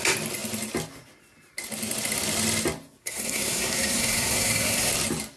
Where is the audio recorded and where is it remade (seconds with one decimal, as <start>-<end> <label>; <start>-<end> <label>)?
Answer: 0.0-3.0 recorded; 3.0-4.9 remade; 4.9-5.4 recorded